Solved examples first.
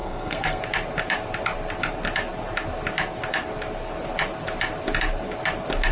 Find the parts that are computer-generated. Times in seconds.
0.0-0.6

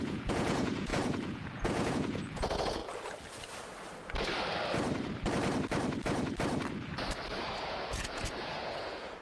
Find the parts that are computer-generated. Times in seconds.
0.0-2.8; 7.6-9.2

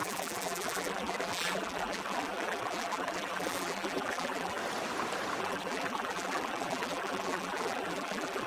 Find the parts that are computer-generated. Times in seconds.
0.0-4.6; 5.4-8.5

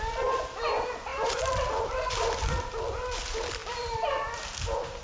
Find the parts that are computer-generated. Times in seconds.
1.1-2.6; 3.6-4.4

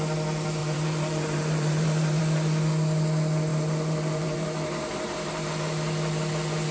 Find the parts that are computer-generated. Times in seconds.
0.6-2.2; 3.5-5.5

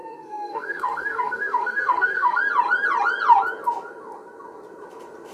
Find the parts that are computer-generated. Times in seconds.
0.0-2.4

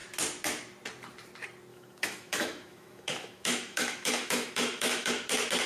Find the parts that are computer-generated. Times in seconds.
1.7-5.1

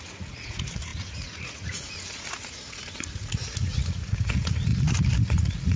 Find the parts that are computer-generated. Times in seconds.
0.0-4.7; 5.2-5.8